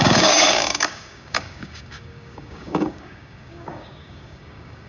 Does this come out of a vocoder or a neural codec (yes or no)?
yes